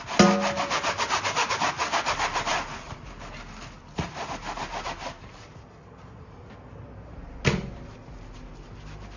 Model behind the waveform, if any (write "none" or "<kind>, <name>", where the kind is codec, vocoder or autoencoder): none